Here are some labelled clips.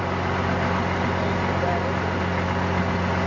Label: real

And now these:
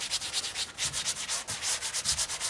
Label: real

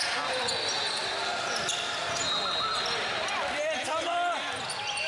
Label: real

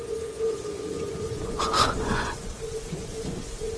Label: fake